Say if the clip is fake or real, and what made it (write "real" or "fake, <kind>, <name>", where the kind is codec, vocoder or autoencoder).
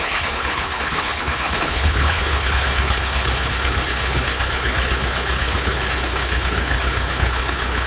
fake, codec, HILCodec